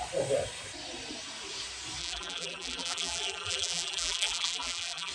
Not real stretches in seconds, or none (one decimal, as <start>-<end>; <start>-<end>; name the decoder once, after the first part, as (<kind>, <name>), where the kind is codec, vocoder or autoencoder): 2.0-5.1 (vocoder, BigVGAN v2)